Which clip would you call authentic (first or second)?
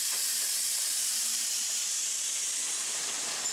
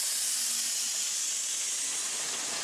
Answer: second